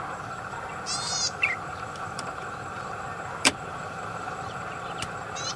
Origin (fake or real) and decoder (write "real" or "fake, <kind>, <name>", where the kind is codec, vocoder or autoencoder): fake, vocoder, BigVGAN v2